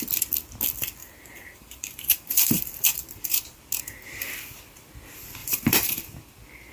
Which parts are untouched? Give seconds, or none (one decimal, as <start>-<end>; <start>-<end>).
0.0-1.0; 3.6-5.4; 6.0-6.7